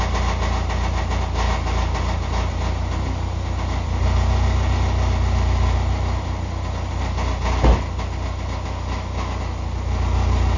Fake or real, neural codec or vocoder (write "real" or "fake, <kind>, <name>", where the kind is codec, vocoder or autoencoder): real